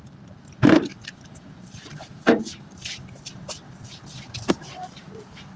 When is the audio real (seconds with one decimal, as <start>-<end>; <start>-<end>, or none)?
none